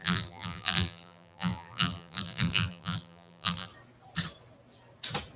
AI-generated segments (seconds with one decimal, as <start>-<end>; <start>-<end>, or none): 0.0-3.7